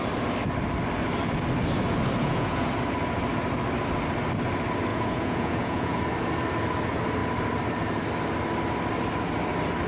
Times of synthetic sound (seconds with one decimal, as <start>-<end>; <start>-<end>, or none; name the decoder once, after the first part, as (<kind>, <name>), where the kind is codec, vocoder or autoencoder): 2.2-2.7 (vocoder, Vocos); 4.9-6.0